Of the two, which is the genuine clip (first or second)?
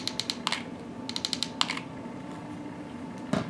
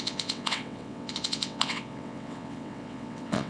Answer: first